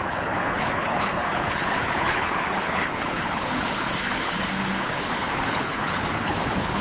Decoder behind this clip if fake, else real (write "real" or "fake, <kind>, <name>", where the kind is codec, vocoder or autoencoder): fake, codec, HILCodec